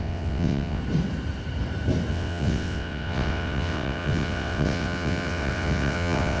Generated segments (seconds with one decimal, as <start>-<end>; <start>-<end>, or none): 0.0-0.8; 2.1-6.4